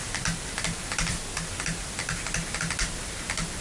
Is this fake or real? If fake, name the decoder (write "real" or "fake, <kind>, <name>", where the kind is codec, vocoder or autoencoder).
real